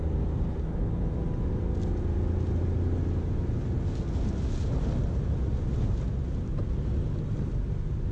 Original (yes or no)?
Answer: yes